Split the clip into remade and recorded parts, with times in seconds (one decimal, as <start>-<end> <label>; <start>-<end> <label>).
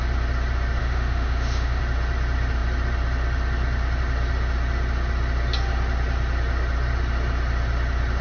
0.0-0.8 recorded; 0.8-1.8 remade; 1.8-8.2 recorded